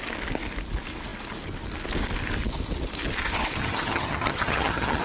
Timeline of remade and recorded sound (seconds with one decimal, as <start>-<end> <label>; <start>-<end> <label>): 0.0-3.6 recorded; 3.6-5.0 remade